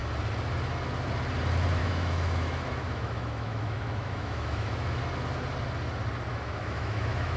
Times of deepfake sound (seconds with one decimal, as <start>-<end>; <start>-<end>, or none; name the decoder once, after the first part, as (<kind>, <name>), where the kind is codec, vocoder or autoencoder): 1.8-5.0 (autoencoder, DAC-VAE); 6.3-7.4